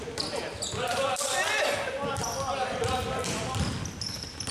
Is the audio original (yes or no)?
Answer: yes